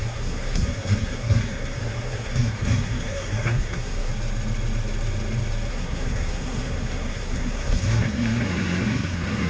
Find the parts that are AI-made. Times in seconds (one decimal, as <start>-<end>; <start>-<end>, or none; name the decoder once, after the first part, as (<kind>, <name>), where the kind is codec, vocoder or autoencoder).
0.0-4.1 (codec, SNAC); 5.7-9.5